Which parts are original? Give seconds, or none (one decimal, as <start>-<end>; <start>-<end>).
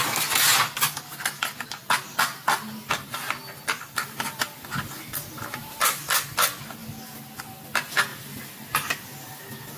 0.0-9.8